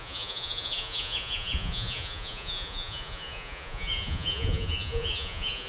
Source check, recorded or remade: remade